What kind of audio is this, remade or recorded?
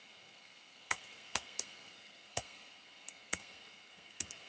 remade